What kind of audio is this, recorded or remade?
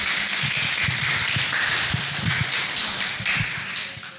recorded